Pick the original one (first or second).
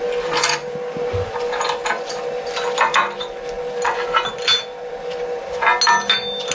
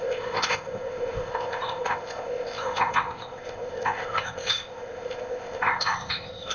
first